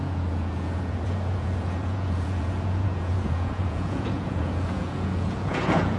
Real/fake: fake